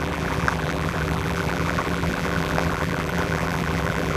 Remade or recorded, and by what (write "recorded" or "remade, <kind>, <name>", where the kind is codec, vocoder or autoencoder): remade, vocoder, BigVGAN v2